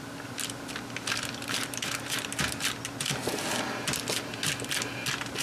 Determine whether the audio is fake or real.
real